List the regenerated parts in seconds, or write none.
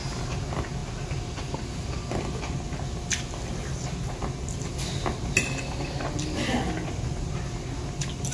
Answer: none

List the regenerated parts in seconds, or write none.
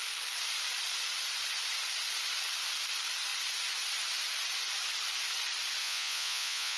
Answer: 5.8-6.8 (vocoder, Vocos)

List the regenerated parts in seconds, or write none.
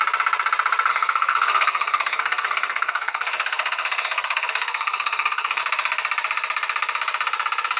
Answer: 0.9-5.6 (codec, SNAC)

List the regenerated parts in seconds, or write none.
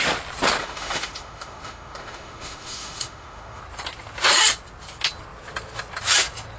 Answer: 0.6-3.6 (autoencoder, DAC-VAE)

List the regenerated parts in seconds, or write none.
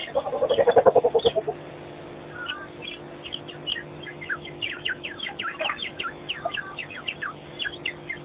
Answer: 4.1-6.3 (autoencoder, DAC-VAE)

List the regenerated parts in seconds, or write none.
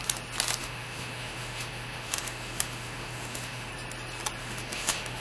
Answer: 0.6-3.7 (autoencoder, DAC-VAE); 4.4-5.2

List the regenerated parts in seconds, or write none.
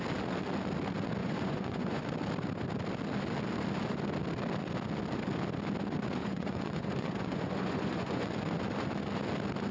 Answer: 1.2-2.0 (vocoder, Vocos); 6.2-8.3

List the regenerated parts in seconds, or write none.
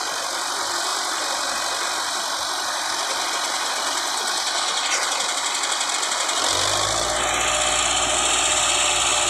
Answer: none